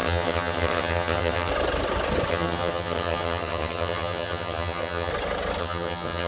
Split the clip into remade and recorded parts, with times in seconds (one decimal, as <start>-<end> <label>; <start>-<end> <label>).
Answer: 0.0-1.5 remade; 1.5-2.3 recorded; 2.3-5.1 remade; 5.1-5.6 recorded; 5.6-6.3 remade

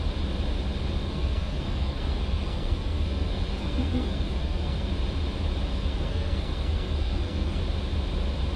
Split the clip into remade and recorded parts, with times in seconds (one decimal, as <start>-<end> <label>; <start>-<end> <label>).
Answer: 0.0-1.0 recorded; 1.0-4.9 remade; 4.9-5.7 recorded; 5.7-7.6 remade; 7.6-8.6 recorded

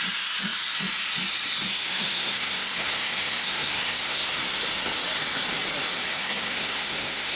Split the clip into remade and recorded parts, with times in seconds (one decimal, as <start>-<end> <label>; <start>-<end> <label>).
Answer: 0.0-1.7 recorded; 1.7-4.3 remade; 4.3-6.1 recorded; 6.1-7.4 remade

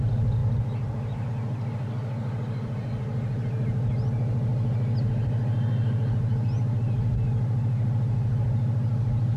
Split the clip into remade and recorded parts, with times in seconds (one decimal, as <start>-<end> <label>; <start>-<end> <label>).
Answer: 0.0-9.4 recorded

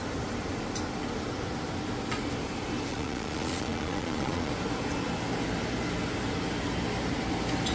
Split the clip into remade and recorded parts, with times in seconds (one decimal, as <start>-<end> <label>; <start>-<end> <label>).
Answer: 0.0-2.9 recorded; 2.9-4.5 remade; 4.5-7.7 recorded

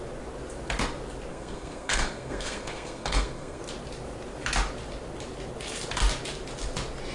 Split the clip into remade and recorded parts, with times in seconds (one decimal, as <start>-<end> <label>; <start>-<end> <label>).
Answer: 0.0-1.3 recorded; 1.3-3.6 remade; 3.6-7.1 recorded

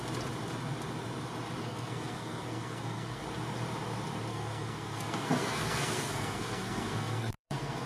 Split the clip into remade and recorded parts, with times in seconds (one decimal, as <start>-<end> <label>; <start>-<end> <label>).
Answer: 0.0-1.6 recorded; 1.6-3.2 remade; 3.2-4.3 recorded; 4.3-7.9 remade

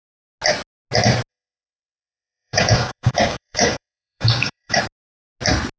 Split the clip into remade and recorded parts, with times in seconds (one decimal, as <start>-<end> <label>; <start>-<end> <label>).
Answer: 0.0-1.3 recorded; 1.3-4.8 remade; 4.8-5.8 recorded